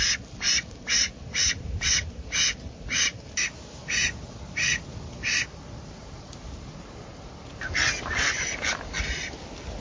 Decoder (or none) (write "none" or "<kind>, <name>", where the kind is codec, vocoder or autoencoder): none